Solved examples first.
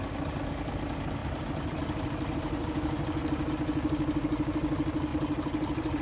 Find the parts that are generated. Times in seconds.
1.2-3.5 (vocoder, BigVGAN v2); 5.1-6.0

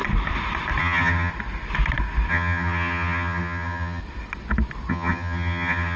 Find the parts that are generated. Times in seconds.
0.8-1.3 (vocoder, HiFi-GAN); 2.3-4.0; 4.9-6.0

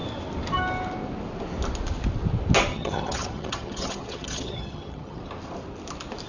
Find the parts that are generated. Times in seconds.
2.7-5.2 (vocoder, HiFi-GAN)